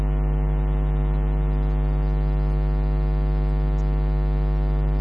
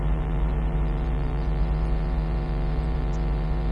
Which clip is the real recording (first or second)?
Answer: first